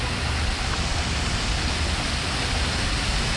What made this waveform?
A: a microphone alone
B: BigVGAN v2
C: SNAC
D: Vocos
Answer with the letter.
A